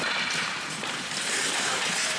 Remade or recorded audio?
remade